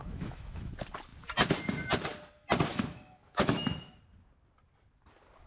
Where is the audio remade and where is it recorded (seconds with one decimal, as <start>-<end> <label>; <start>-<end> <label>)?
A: 0.0-0.7 remade; 0.7-2.7 recorded; 2.7-4.0 remade; 4.0-5.5 recorded